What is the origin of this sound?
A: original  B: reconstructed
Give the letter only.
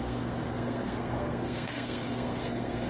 B